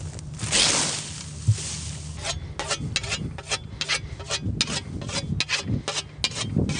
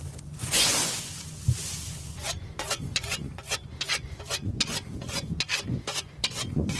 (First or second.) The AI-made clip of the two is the second